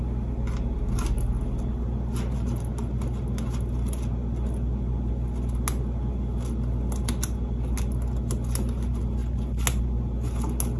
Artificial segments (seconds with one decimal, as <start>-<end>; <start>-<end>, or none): none